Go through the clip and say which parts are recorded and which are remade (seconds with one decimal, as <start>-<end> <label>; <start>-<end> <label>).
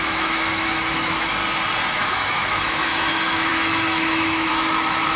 0.0-1.4 remade; 1.4-1.9 recorded; 1.9-5.2 remade